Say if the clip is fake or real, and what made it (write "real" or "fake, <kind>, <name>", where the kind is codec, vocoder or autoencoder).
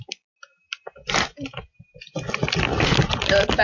real